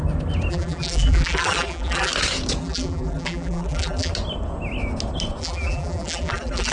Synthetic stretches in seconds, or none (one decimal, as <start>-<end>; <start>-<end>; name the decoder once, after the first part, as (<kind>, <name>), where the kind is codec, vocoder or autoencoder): 0.5-2.1 (vocoder, BigVGAN v2); 2.6-4.1; 5.4-6.7